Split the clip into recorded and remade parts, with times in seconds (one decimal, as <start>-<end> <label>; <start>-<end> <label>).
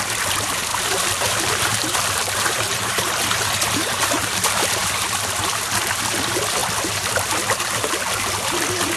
0.0-0.7 recorded; 0.7-3.1 remade; 3.1-4.2 recorded; 4.2-4.9 remade; 4.9-9.0 recorded